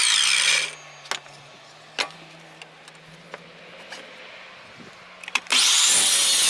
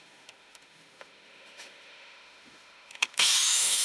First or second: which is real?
first